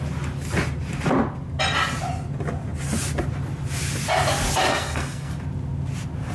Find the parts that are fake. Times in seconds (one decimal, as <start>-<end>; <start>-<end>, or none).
4.7-5.3